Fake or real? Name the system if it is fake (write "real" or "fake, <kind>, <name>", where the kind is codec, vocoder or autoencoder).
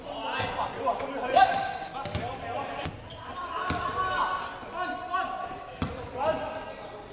real